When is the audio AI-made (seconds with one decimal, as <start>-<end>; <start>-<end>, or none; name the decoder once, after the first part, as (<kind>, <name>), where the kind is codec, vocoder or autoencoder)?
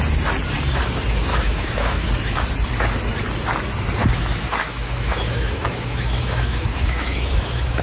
1.3-2.1 (autoencoder, DAC-VAE); 4.0-7.8